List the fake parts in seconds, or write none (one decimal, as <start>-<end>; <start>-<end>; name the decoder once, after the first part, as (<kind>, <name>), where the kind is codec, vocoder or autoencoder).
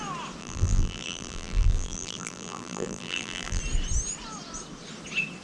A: 0.4-3.6 (vocoder, BigVGAN v2)